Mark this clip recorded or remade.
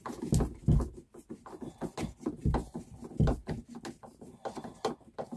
recorded